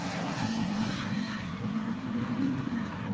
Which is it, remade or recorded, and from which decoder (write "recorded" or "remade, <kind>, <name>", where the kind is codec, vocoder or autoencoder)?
remade, codec, SNAC